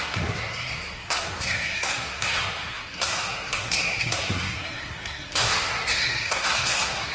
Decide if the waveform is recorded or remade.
remade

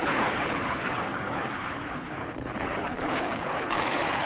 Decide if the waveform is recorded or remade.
remade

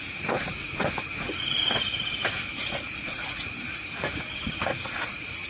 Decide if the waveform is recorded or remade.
remade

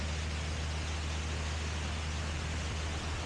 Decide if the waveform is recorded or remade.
recorded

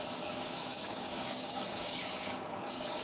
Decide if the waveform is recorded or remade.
remade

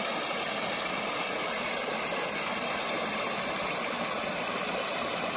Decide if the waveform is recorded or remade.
recorded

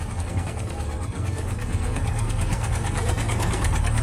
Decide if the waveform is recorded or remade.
remade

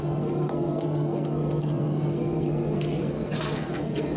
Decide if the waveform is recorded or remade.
remade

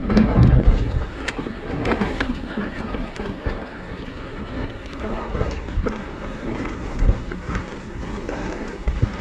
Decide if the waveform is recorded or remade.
remade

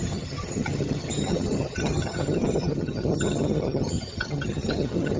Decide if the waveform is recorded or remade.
remade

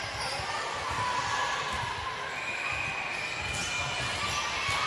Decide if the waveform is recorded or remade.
recorded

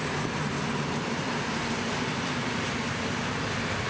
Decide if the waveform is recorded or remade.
recorded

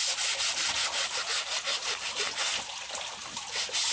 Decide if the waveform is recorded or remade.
recorded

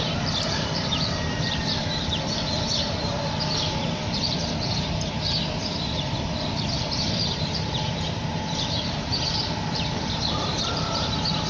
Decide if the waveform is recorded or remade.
remade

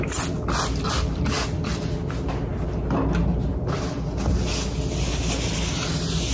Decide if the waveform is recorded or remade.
recorded